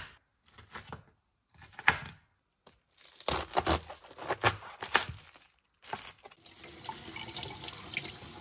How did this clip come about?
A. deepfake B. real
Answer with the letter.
B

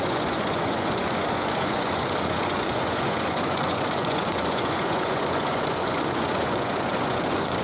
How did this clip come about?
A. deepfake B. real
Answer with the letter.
A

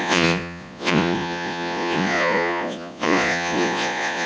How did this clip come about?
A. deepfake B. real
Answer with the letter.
A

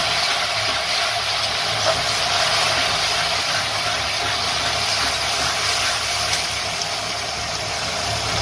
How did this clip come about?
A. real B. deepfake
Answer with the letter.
A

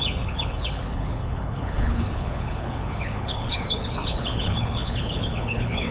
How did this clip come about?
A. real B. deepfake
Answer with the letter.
B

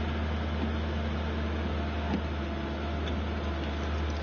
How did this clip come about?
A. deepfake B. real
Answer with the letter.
B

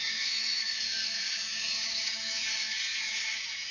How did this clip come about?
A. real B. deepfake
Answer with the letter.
B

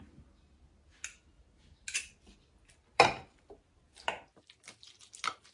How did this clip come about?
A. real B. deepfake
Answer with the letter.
A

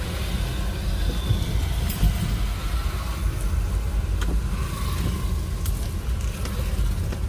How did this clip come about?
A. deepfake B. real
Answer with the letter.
B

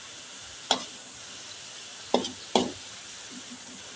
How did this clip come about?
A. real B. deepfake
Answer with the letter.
A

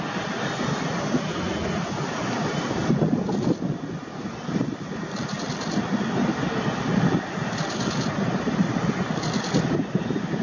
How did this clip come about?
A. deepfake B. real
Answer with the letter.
B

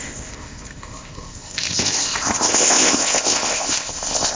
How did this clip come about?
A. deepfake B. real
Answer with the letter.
A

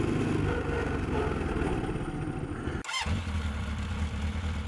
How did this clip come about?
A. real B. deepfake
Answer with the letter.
A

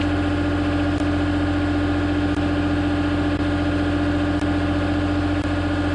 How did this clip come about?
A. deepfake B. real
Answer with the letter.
B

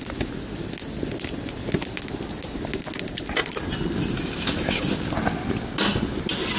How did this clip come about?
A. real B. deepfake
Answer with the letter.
A